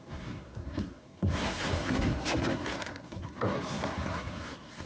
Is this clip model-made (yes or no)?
yes